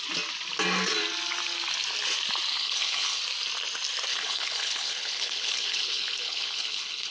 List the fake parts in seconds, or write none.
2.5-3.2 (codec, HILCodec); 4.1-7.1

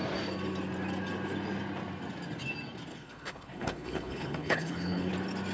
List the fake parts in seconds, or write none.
2.9-5.1 (codec, HILCodec)

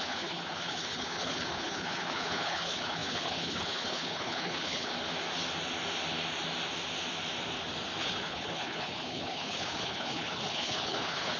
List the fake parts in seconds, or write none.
0.0-4.9 (codec, HILCodec); 8.0-11.4

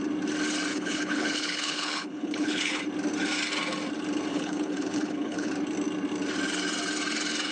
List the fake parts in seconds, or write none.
0.7-2.8 (codec, HILCodec); 4.3-5.5